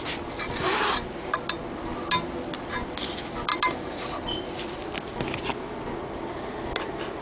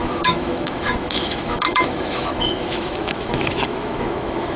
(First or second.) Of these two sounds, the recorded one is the first